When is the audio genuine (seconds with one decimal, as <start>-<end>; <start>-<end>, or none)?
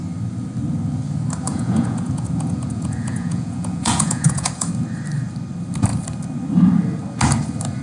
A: 0.0-1.5; 4.7-7.8